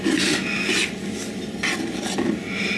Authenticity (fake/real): real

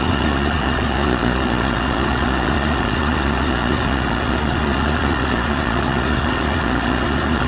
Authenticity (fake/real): fake